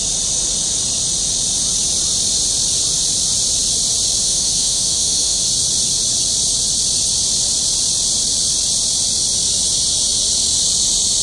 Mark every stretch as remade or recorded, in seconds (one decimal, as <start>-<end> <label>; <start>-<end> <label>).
0.0-4.2 recorded; 4.2-5.5 remade; 5.5-11.2 recorded